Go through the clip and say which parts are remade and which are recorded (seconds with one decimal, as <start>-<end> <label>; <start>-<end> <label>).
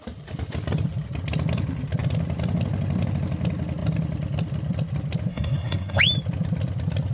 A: 0.0-5.3 recorded; 5.3-6.0 remade; 6.0-7.1 recorded